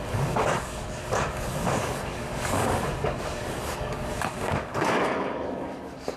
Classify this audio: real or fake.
fake